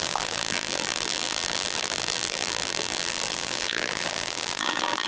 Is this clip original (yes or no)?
no